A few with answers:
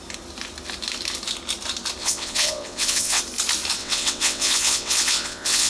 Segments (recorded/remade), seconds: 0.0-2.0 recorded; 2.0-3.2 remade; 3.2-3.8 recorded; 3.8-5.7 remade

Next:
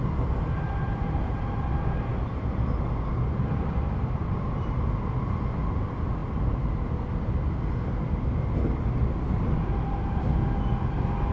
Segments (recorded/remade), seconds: 0.0-11.3 recorded

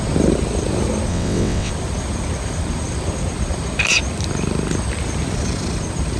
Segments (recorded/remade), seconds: 0.0-1.1 recorded; 1.1-1.7 remade; 1.7-6.2 recorded

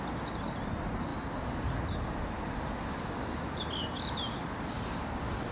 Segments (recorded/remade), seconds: 0.0-5.5 recorded

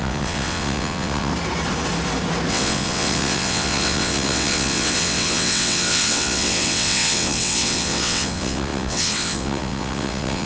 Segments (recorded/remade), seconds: 0.0-1.3 remade; 1.3-2.5 recorded; 2.5-10.5 remade

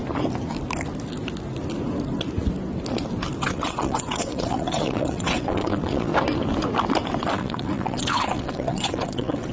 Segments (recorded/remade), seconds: 0.0-3.4 recorded; 3.4-6.1 remade; 6.1-7.2 recorded; 7.2-9.5 remade

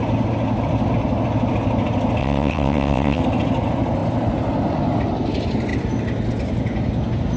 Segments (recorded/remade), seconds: 0.0-2.2 recorded; 2.2-3.2 remade; 3.2-7.4 recorded

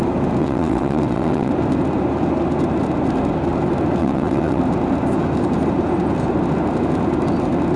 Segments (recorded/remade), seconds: 0.0-0.4 recorded; 0.4-1.5 remade; 1.5-4.0 recorded; 4.0-4.6 remade; 4.6-7.8 recorded